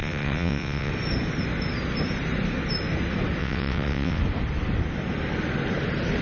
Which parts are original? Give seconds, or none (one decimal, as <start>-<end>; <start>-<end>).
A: 0.9-3.4; 4.2-6.2